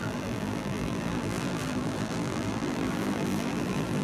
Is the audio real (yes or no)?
no